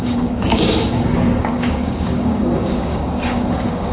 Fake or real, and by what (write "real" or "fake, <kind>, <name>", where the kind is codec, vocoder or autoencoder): fake, codec, DAC